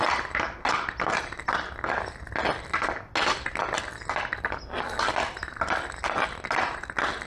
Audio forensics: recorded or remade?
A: recorded